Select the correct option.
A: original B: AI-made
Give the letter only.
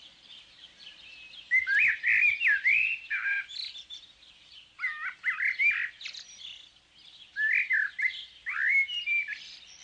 A